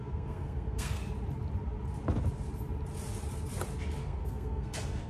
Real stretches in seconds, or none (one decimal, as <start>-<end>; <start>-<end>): 1.0-4.0